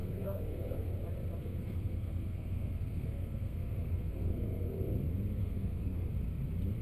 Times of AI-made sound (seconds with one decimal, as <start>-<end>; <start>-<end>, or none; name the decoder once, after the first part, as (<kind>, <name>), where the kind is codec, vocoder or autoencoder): 0.0-0.9 (codec, SNAC); 1.4-4.8; 5.4-6.1